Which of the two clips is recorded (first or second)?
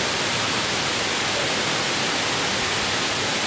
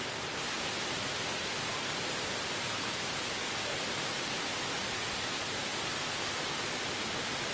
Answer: second